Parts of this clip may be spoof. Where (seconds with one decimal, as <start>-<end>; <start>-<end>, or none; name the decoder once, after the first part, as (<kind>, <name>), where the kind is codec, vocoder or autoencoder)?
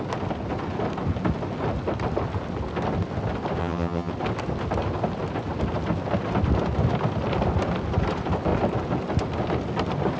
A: 3.6-4.1 (vocoder, HiFi-GAN)